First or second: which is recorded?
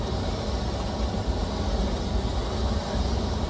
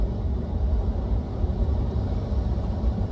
first